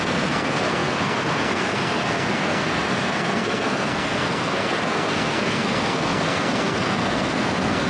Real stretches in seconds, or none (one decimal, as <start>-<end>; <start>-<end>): none